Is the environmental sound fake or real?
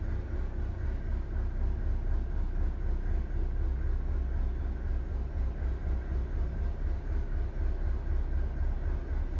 real